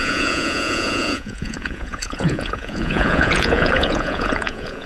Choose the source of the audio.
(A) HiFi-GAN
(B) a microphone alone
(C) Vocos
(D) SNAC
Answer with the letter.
C